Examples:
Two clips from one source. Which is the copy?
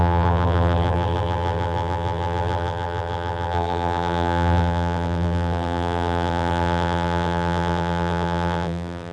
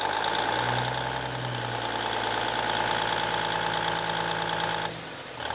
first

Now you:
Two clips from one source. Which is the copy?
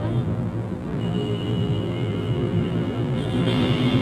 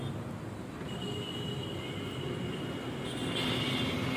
first